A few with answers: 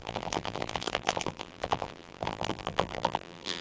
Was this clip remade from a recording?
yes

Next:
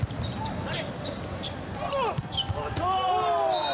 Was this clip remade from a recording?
no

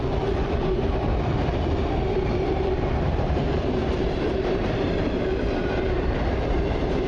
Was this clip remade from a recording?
yes